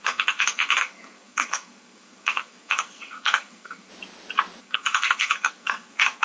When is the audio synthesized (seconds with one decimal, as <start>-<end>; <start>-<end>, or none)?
0.0-3.9; 4.6-6.2